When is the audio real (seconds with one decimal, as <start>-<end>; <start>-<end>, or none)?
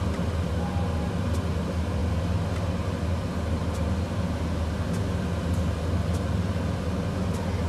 0.0-7.7